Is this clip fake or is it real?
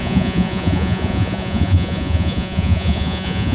fake